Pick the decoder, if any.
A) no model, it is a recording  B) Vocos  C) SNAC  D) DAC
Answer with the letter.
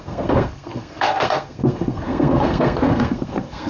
C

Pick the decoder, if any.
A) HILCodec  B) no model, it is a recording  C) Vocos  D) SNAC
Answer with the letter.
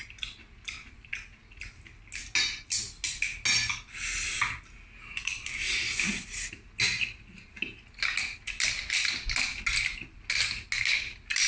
B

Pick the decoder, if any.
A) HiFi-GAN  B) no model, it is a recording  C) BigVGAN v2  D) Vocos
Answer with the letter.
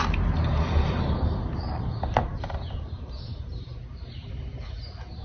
C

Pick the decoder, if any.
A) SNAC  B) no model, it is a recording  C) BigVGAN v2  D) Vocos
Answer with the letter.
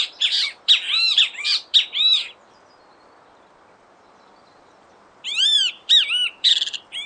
C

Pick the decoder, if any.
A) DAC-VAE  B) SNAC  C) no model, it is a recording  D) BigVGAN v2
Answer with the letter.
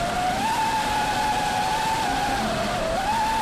C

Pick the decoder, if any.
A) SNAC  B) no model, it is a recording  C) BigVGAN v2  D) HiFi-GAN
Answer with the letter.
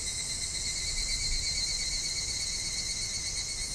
B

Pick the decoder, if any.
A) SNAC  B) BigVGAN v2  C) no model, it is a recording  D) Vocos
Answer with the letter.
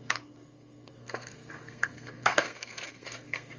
A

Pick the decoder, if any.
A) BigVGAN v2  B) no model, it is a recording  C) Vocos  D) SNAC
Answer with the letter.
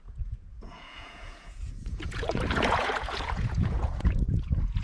C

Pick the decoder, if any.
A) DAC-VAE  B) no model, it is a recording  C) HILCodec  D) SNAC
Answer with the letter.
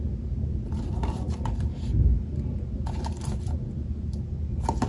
B